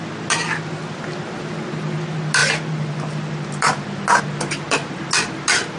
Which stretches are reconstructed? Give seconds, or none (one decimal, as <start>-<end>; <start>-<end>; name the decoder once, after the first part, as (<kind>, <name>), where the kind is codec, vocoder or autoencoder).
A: none